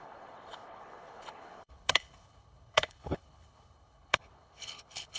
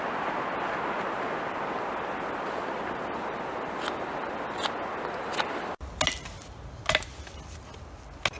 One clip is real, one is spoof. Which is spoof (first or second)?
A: first